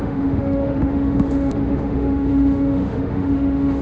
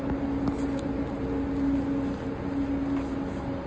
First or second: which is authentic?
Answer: second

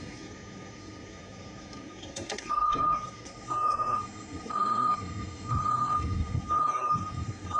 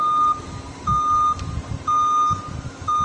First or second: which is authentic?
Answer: second